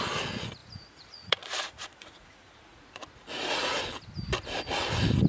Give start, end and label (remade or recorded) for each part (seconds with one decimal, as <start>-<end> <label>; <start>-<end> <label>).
0.0-0.6 recorded; 0.6-3.8 remade; 3.8-5.3 recorded

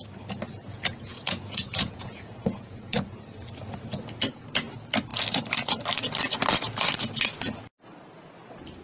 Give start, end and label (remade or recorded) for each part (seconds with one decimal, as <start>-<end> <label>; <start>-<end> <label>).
0.0-0.7 recorded; 0.7-3.2 remade; 3.2-8.8 recorded